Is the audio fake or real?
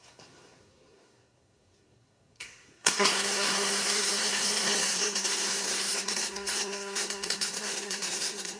fake